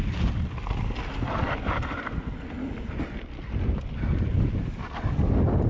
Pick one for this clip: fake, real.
real